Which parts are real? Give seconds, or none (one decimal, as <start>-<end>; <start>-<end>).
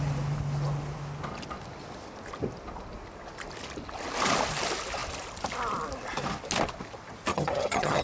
0.0-7.3